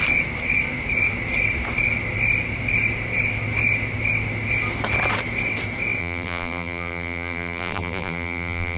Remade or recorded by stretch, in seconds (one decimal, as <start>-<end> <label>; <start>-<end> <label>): 0.0-6.0 recorded; 6.0-8.8 remade

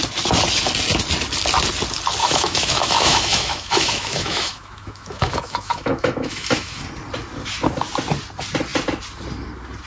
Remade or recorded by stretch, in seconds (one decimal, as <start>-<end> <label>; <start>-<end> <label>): 0.0-2.2 recorded; 2.2-6.8 remade; 6.8-9.9 recorded

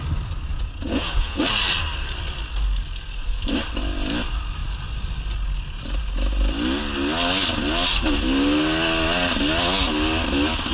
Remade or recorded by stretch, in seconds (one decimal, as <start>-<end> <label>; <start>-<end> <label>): 0.0-0.5 recorded; 0.5-1.4 remade; 1.4-10.7 recorded

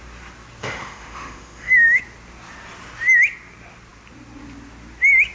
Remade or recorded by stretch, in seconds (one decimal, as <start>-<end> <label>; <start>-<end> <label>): 0.0-0.6 recorded; 0.6-2.0 remade; 2.0-5.3 recorded

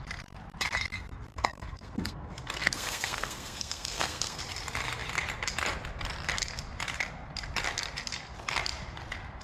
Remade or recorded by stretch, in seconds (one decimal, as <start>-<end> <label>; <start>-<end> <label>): 0.0-1.3 recorded; 1.3-4.4 remade; 4.4-9.4 recorded

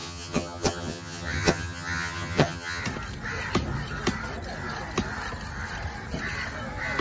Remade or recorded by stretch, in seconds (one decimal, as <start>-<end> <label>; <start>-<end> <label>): 0.0-2.8 remade; 2.8-7.0 recorded